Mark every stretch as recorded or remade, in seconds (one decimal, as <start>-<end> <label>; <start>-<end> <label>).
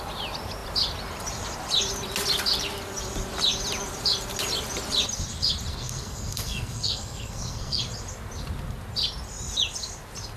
0.0-5.7 recorded; 5.7-7.8 remade; 7.8-10.4 recorded